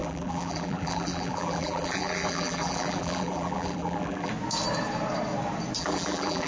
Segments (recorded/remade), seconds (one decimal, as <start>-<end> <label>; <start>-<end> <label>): 0.0-4.3 remade; 4.3-5.8 recorded; 5.8-6.5 remade